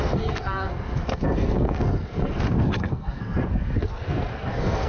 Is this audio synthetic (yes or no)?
yes